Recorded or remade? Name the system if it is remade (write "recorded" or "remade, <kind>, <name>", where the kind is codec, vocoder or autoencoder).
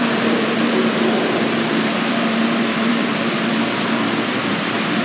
remade, vocoder, BigVGAN v2